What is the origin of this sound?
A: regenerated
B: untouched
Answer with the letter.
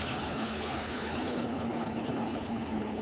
A